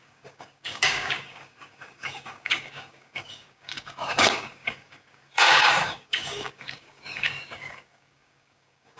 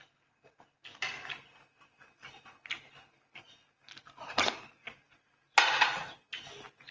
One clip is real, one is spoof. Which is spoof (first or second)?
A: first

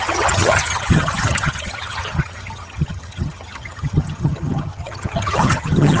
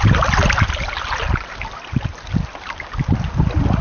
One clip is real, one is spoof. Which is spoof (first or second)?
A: first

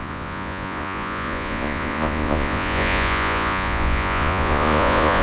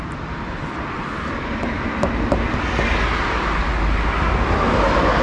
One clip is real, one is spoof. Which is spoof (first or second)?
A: first